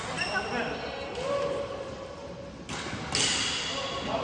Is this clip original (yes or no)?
yes